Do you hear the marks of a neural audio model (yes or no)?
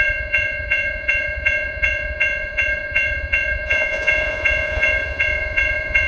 yes